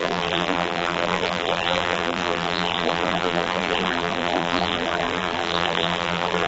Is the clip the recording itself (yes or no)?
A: no